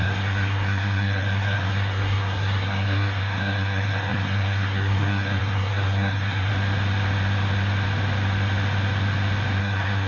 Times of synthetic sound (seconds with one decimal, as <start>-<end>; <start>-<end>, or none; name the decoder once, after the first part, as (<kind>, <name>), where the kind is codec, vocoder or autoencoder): 0.0-6.5 (codec, SNAC); 9.6-10.1

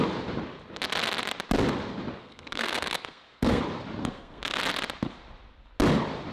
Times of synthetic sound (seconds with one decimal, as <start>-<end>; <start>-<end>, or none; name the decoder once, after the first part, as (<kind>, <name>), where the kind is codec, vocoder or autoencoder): 2.2-3.6 (codec, SNAC); 4.0-4.6